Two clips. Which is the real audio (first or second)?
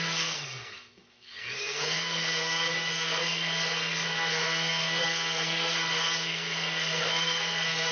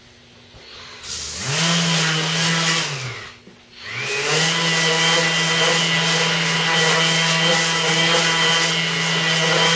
second